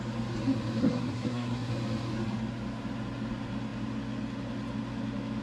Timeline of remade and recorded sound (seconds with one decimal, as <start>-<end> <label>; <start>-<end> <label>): 0.0-0.8 recorded; 0.8-1.7 remade; 1.7-5.4 recorded